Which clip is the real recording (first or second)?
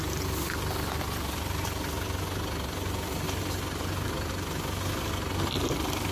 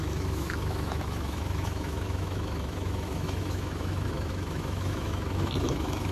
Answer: first